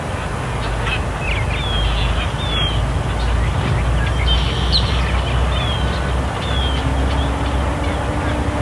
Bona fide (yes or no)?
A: yes